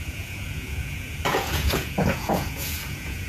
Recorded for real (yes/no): no